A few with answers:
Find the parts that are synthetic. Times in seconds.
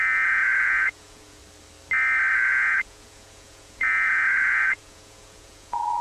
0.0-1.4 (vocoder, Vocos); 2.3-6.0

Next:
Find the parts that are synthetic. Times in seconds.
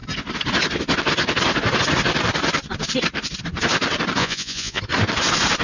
4.2-4.8 (vocoder, Vocos)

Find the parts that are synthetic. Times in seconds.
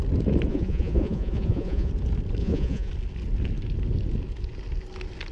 0.5-1.9 (vocoder, Vocos); 2.4-2.9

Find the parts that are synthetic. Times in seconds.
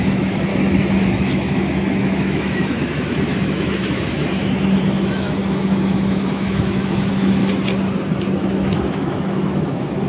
0.0-0.5 (autoencoder, DAC-VAE); 1.1-4.2; 4.8-7.4; 8.4-10.1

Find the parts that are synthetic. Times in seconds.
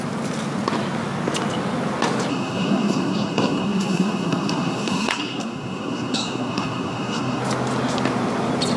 2.3-7.4 (codec, SNAC)